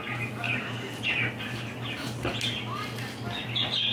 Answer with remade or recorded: recorded